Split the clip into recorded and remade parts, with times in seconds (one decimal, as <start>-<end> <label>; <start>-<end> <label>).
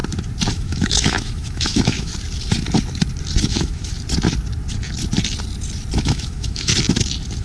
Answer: 0.0-0.5 recorded; 0.5-2.1 remade; 2.1-3.4 recorded; 3.4-3.9 remade; 3.9-6.0 recorded; 6.0-6.7 remade; 6.7-7.4 recorded